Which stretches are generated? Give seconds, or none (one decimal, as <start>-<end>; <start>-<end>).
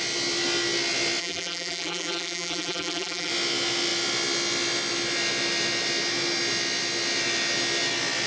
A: 1.2-3.3